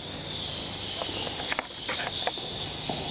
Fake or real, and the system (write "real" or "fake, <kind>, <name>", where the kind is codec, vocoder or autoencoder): real